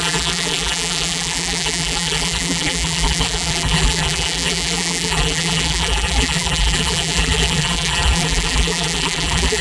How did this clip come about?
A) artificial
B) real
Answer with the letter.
A